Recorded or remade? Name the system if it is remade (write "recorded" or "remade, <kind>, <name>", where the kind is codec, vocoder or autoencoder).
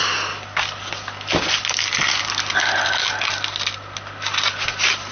recorded